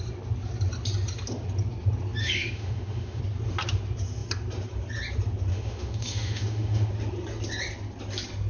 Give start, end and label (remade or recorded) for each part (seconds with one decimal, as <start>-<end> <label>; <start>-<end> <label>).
0.0-2.2 recorded; 2.2-3.2 remade; 3.2-5.5 recorded; 5.5-6.9 remade; 6.9-8.5 recorded